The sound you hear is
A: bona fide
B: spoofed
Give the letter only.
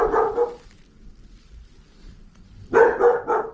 A